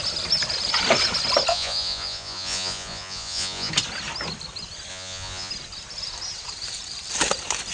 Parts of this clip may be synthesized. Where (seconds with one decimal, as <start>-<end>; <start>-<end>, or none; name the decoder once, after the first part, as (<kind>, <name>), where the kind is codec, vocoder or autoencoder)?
1.5-3.7 (vocoder, Vocos); 4.9-5.5